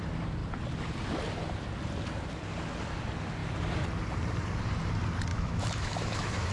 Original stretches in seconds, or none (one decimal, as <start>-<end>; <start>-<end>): 0.0-5.3